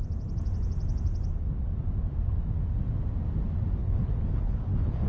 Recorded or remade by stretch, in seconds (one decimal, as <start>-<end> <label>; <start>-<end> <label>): 0.0-3.8 recorded; 3.8-5.1 remade